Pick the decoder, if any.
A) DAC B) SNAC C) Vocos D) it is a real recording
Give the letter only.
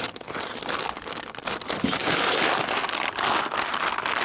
D